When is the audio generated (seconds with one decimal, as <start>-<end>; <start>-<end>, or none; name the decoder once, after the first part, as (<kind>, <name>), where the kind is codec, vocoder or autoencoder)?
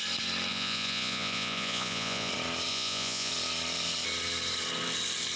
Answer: 0.5-2.3 (vocoder, Vocos); 2.7-3.3